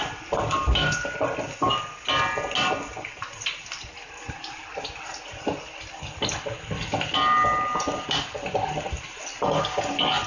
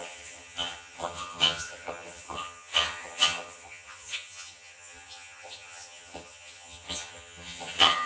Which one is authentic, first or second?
first